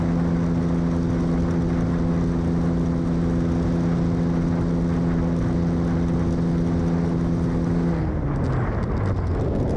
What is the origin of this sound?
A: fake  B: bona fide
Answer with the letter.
B